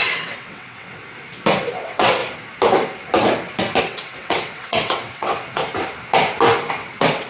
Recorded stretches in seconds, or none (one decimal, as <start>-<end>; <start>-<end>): 1.0-1.8; 2.2-3.8; 5.6-6.7